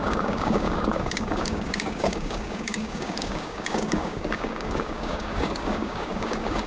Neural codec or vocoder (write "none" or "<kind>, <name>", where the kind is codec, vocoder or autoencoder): codec, DAC